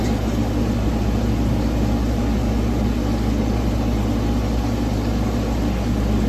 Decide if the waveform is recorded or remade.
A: recorded